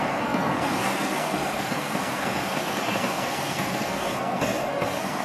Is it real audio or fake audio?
fake